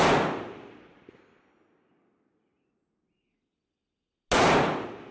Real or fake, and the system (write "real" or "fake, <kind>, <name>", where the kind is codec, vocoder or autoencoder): real